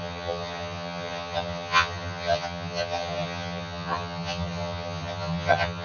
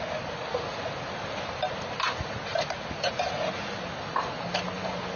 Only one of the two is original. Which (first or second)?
second